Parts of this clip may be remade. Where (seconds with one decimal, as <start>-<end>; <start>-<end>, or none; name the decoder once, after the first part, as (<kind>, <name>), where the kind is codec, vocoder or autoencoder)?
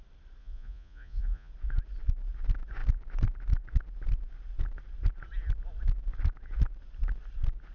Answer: 0.4-1.5 (vocoder, Vocos)